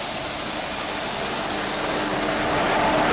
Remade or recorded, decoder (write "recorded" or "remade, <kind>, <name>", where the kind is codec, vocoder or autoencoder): recorded